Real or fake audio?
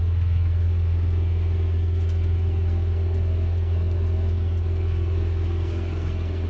fake